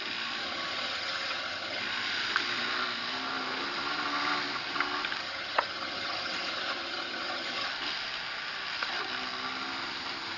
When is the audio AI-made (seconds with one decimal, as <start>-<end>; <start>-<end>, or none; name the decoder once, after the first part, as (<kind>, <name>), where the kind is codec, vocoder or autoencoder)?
0.4-1.8 (vocoder, HiFi-GAN); 5.2-7.7